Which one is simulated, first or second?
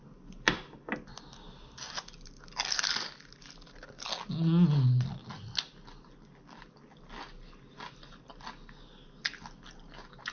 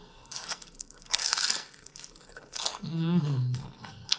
second